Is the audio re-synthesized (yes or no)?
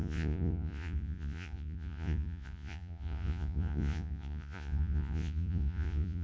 yes